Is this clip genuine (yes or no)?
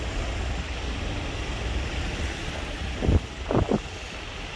yes